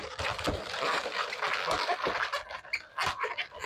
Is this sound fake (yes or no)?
no